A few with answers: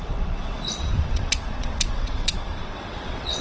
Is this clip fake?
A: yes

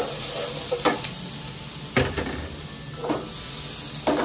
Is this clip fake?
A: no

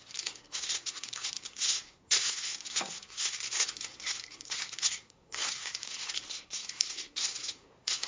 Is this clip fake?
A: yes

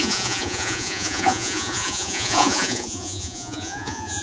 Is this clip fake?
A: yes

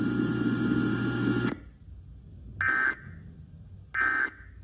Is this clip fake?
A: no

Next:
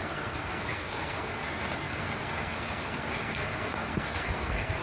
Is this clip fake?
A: yes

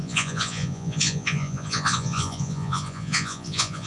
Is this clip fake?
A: yes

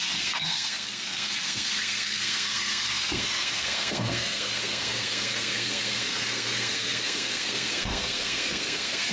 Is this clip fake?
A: yes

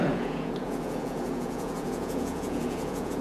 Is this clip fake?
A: yes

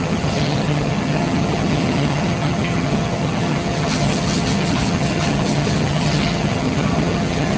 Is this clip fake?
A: yes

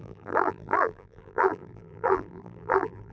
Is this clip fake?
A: yes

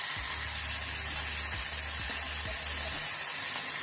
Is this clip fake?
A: no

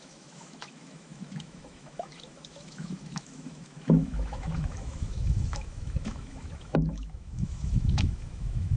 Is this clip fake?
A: yes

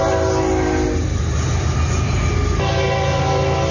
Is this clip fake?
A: no